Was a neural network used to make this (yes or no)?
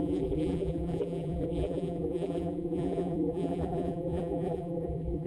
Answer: yes